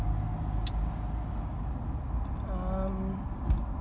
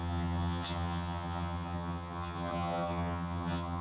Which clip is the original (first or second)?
first